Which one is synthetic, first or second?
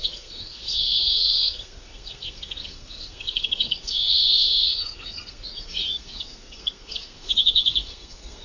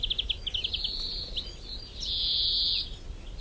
first